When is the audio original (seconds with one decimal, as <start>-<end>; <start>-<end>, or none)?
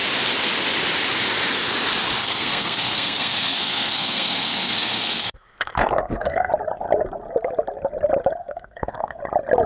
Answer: 0.0-2.2; 6.5-8.4; 9.2-9.7